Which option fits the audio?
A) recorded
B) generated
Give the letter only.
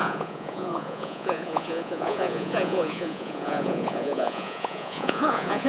B